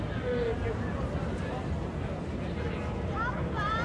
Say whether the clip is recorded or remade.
recorded